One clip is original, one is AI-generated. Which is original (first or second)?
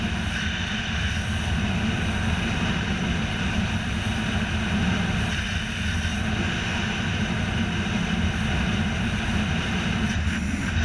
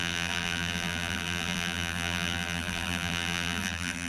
first